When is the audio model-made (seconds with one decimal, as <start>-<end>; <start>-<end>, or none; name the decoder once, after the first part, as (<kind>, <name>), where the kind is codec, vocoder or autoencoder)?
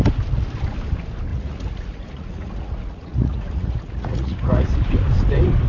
1.3-4.7 (vocoder, Vocos)